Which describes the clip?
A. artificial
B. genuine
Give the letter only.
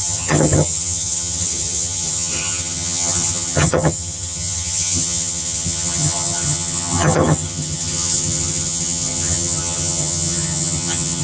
A